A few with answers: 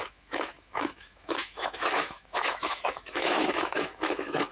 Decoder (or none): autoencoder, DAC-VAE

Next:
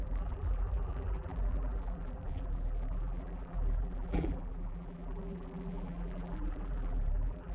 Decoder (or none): vocoder, BigVGAN v2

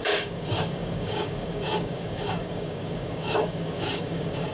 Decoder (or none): codec, DAC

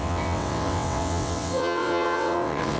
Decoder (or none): vocoder, WaveNeXt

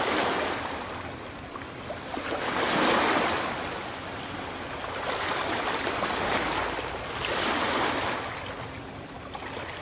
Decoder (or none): none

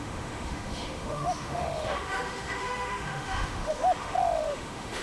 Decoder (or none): autoencoder, DAC-VAE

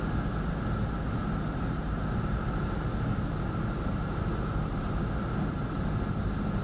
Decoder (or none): none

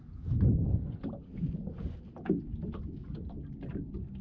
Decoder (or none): none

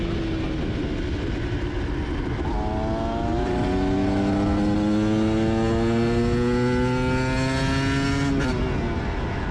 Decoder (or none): none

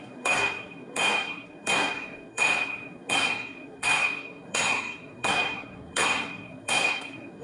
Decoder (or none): codec, SNAC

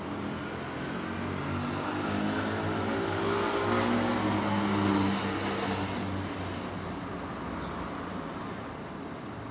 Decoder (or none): none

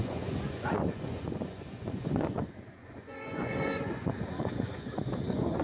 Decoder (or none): vocoder, Vocos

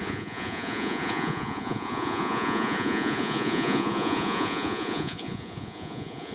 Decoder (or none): vocoder, Vocos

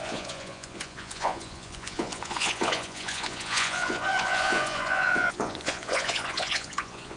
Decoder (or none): vocoder, Vocos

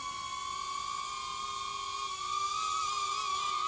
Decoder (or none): none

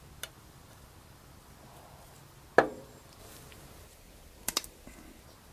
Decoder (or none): none